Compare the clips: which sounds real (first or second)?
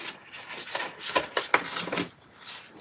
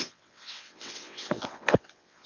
first